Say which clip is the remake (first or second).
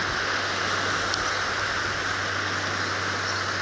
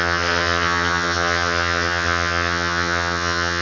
second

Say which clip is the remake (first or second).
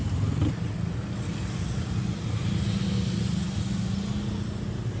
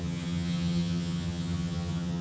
second